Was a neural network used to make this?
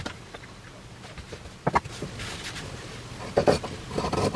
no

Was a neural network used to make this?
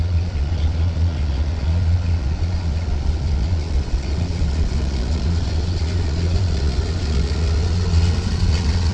yes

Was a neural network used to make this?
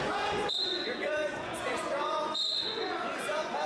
yes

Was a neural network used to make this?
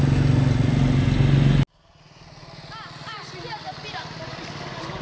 no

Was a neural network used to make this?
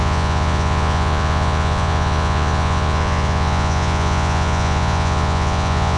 yes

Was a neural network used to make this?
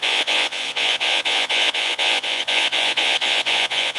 yes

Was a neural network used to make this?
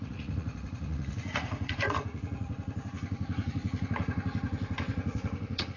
yes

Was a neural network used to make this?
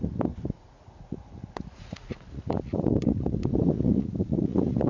yes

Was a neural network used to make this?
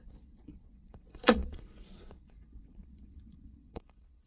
yes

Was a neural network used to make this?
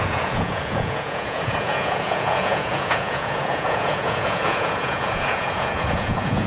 yes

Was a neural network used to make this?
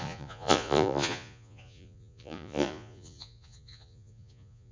yes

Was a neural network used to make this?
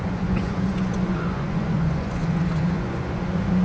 yes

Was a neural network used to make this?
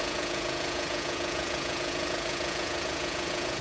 yes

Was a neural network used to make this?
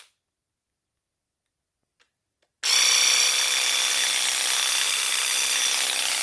no